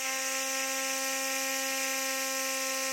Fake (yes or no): no